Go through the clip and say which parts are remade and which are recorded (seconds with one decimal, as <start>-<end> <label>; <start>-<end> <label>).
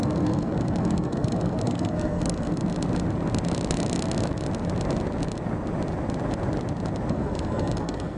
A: 0.0-2.6 remade; 2.6-7.1 recorded; 7.1-8.2 remade